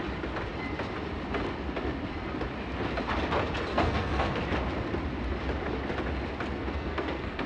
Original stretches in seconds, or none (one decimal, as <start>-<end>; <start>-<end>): 0.0-3.7; 4.4-6.5